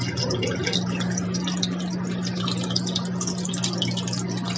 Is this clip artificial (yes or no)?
no